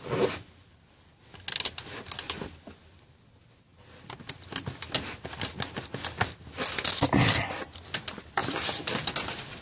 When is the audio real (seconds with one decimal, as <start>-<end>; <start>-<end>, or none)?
0.0-9.6